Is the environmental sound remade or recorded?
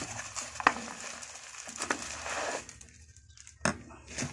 recorded